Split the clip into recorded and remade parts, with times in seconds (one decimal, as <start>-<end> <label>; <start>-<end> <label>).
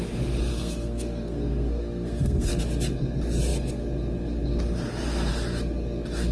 0.0-0.5 recorded; 0.5-2.6 remade; 2.6-6.3 recorded